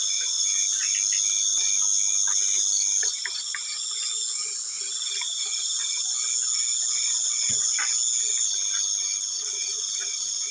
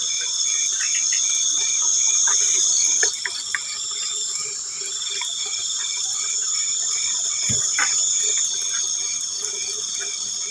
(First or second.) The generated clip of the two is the second